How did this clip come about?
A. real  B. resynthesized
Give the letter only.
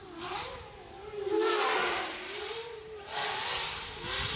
A